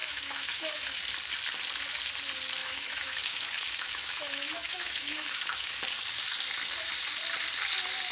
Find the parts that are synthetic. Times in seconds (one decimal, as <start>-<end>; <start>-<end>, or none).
0.0-1.0; 2.6-5.7

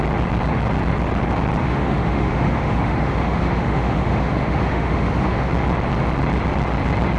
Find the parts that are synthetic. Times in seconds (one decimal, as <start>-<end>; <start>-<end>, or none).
1.6-5.5

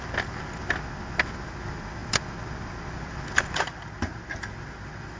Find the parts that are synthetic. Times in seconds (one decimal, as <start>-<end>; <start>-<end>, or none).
none

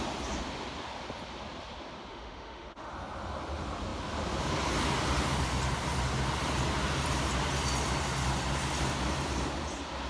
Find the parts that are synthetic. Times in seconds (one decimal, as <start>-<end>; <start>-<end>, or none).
2.1-2.9

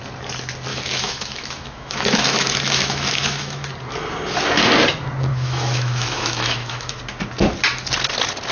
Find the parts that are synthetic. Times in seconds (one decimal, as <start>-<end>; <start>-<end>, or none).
0.7-3.7; 5.3-7.0

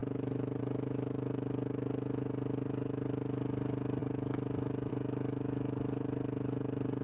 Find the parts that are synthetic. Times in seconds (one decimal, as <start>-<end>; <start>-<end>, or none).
0.0-7.0

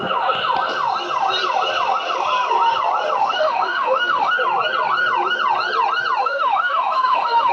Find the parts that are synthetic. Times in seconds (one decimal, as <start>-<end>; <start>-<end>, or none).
3.2-4.3; 6.2-7.5

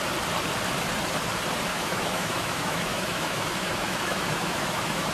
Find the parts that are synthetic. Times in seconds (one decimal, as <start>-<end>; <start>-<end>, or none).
1.7-5.1